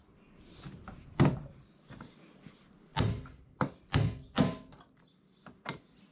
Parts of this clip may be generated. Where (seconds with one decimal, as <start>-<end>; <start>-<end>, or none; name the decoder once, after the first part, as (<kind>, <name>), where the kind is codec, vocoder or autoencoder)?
none